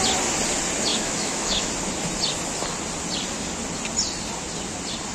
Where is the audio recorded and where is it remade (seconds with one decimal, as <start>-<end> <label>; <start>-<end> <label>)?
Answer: 0.0-0.9 recorded; 0.9-1.7 remade; 1.7-5.1 recorded